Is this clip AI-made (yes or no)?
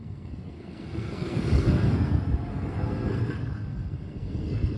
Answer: yes